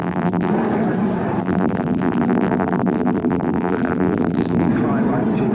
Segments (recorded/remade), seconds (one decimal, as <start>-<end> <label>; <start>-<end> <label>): 0.0-0.5 remade; 0.5-1.4 recorded; 1.4-4.7 remade; 4.7-5.5 recorded

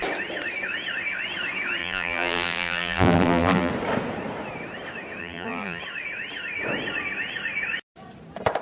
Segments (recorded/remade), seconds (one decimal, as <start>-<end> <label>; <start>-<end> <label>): 0.0-1.8 recorded; 1.8-3.7 remade; 3.7-5.2 recorded; 5.2-5.8 remade; 5.8-8.6 recorded

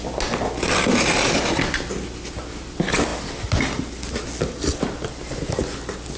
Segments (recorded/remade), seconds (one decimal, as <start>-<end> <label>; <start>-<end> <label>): 0.0-6.2 recorded

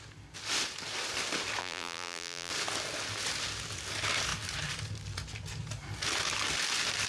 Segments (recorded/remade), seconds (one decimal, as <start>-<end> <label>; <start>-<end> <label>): 0.0-1.6 recorded; 1.6-2.5 remade; 2.5-7.1 recorded

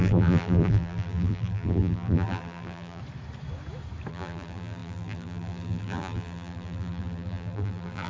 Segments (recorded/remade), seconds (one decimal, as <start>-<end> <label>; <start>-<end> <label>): 0.0-3.0 remade; 3.0-4.1 recorded; 4.1-8.1 remade